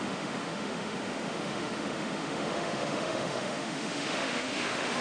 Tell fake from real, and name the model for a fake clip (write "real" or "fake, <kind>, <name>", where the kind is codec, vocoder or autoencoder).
fake, autoencoder, DAC-VAE